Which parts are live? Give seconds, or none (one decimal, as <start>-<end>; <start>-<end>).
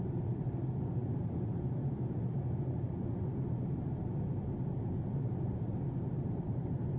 0.0-7.0